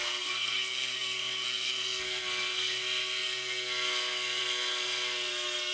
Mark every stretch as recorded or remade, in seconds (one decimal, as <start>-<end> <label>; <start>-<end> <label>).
0.0-5.7 remade

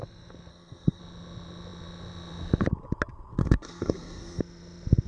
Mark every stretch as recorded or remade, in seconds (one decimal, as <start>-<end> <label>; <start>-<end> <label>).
0.0-0.5 recorded; 0.5-1.0 remade; 1.0-3.4 recorded; 3.4-4.4 remade; 4.4-5.1 recorded